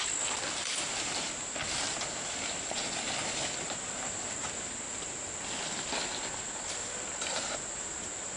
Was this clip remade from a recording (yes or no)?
no